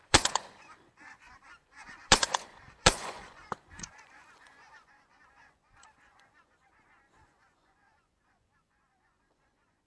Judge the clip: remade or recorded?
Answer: remade